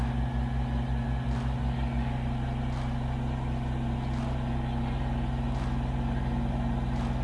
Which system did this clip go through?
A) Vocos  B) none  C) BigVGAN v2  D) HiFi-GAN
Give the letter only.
B